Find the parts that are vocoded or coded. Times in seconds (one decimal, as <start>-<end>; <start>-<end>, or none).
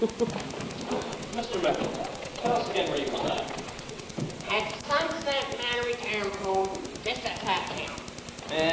1.1-4.5